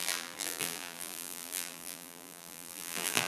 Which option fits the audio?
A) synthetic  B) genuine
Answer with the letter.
A